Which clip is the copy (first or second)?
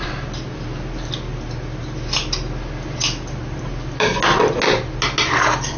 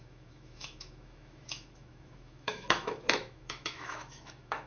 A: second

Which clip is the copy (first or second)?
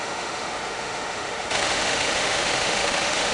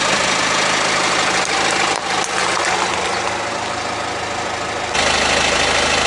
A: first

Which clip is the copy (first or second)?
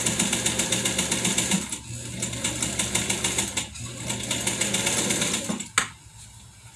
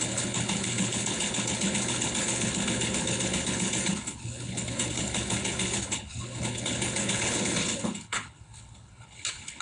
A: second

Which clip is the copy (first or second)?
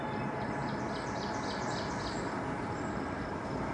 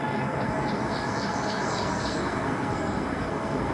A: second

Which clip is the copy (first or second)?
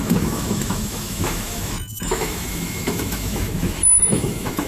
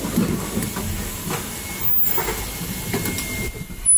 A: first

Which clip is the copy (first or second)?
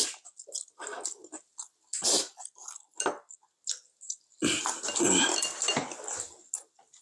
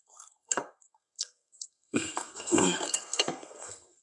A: second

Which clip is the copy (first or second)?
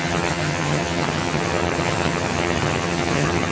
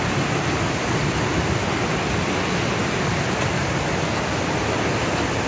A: first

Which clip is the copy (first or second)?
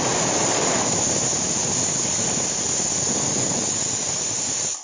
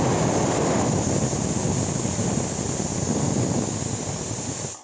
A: first